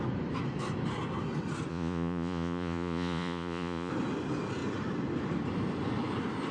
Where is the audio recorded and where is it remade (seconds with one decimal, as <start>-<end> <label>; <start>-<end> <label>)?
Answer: 0.0-1.7 recorded; 1.7-3.9 remade; 3.9-6.5 recorded